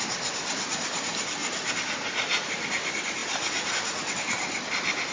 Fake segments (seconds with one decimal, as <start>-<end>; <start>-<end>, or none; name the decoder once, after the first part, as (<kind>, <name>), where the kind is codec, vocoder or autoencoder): none